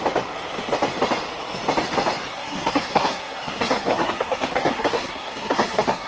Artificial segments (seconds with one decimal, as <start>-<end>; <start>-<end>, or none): 2.3-6.1